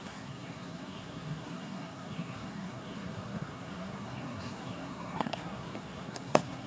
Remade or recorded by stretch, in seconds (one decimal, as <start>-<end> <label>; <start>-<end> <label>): 0.0-6.7 remade